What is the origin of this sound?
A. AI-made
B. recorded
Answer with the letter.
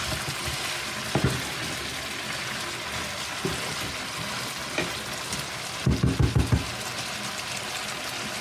B